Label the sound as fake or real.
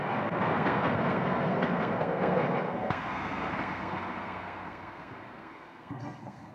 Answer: fake